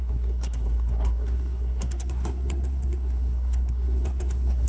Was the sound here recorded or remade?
remade